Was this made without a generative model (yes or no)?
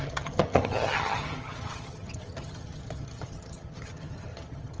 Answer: no